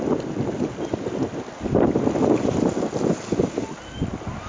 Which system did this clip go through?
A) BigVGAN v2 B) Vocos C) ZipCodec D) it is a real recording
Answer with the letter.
D